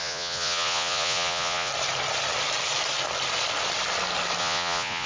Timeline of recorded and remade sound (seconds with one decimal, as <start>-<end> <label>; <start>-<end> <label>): 0.0-1.7 remade; 1.7-4.4 recorded; 4.4-5.1 remade